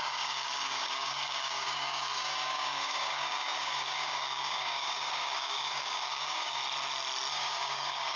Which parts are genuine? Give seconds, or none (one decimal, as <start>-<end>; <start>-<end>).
6.6-7.3